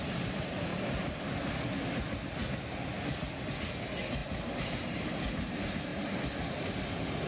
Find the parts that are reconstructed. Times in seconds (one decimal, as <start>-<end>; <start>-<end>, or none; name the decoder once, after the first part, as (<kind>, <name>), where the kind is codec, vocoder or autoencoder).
4.2-5.5 (vocoder, BigVGAN v2)